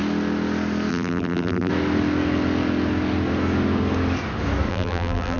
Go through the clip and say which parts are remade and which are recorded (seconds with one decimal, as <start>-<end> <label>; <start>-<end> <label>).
0.0-0.9 recorded; 0.9-1.7 remade; 1.7-4.7 recorded; 4.7-5.4 remade